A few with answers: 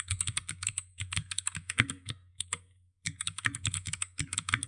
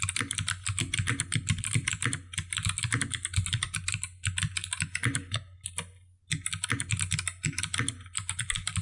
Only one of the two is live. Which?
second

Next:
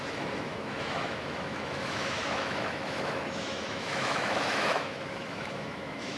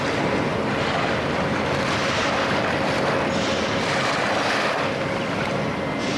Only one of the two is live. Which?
second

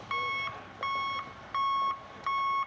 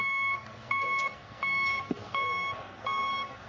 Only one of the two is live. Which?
first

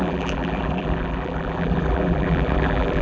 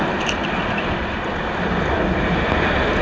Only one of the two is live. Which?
second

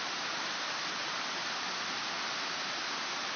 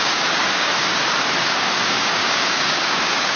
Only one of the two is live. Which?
first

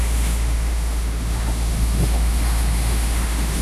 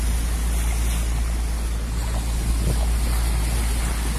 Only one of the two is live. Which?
second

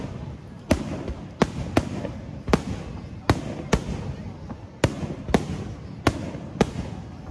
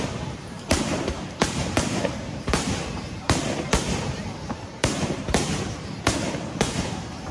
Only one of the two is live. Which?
first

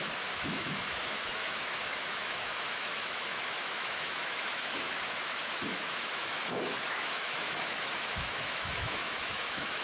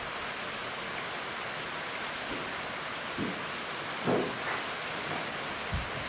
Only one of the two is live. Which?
second